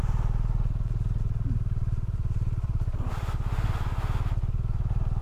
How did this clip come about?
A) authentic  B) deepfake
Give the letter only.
A